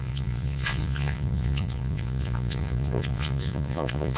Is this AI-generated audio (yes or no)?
yes